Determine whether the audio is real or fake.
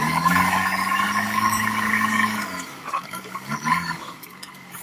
fake